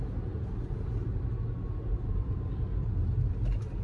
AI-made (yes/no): no